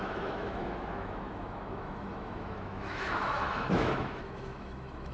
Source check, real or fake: fake